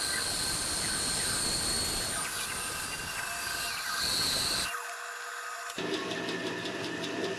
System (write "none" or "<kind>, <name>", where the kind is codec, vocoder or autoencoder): none